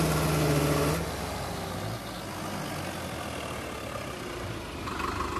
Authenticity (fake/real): real